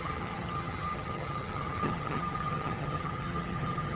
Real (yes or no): no